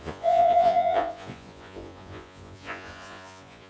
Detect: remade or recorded remade